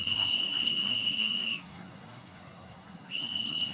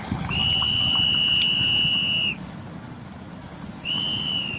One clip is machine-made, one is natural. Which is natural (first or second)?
second